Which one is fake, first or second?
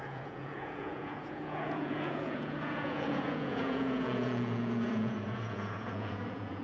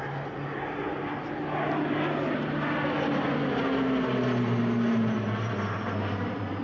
first